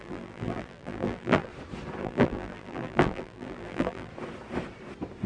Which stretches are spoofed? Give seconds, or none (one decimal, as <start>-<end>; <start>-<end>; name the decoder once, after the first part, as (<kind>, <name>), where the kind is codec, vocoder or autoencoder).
0.0-1.5 (vocoder, BigVGAN v2); 2.0-4.1